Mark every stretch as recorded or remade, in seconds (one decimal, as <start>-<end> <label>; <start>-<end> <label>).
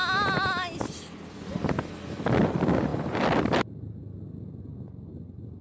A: 0.0-5.6 recorded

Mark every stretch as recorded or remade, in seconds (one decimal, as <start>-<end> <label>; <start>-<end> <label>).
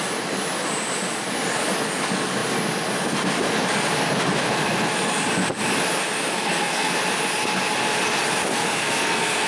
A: 0.0-6.3 recorded; 6.3-6.9 remade; 6.9-8.5 recorded; 8.5-9.5 remade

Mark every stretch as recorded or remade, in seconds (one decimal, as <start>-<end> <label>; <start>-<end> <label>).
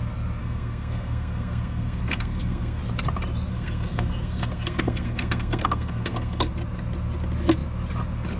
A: 0.0-0.4 recorded; 0.4-2.8 remade; 2.8-3.5 recorded; 3.5-6.5 remade; 6.5-8.4 recorded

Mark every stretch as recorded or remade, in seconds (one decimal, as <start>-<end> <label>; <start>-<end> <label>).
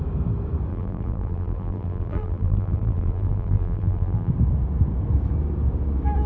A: 0.0-0.7 recorded; 0.7-4.3 remade; 4.3-6.3 recorded